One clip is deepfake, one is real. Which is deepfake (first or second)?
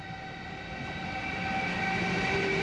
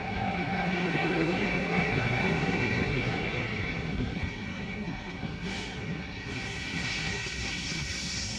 second